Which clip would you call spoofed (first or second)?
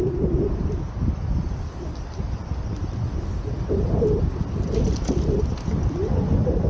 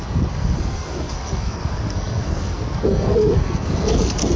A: second